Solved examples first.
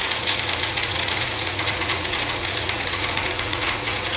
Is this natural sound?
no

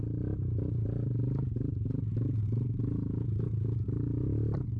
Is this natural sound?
yes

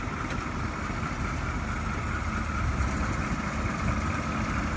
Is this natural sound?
yes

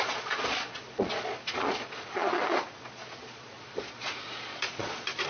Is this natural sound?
no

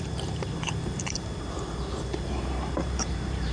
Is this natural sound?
no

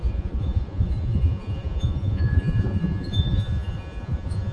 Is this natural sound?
no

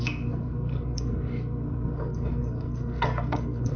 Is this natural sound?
no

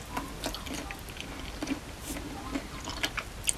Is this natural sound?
yes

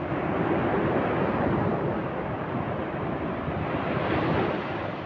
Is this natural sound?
yes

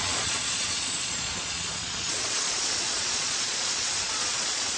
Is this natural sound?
no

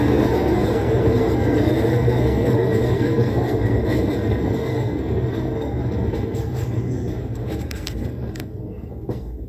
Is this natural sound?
no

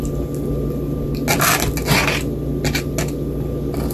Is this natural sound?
yes